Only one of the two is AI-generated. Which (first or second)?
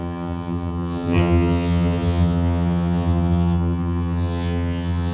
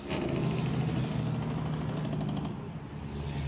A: first